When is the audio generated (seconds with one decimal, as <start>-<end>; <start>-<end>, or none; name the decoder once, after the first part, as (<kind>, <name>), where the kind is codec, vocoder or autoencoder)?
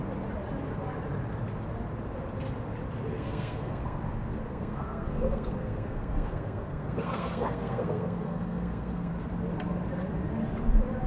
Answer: 3.1-4.0 (codec, SNAC); 4.5-9.1